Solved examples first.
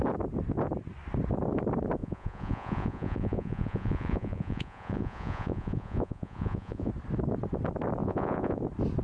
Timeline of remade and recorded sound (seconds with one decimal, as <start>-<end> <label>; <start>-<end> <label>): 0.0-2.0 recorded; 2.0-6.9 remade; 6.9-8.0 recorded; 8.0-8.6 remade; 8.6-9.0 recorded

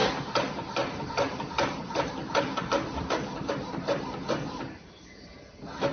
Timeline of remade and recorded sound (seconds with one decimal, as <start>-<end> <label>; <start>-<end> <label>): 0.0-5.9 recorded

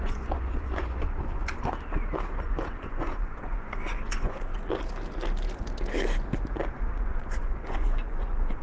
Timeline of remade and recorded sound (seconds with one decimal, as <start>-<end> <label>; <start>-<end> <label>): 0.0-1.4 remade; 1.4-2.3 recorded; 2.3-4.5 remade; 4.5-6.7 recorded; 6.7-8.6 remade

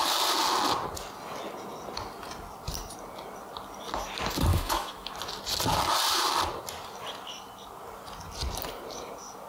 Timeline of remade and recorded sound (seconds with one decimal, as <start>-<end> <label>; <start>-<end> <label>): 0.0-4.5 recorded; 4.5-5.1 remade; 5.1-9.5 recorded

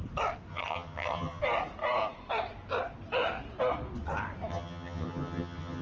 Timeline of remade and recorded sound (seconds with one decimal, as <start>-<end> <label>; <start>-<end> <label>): 0.0-0.5 recorded; 0.5-1.4 remade; 1.4-4.5 recorded; 4.5-5.8 remade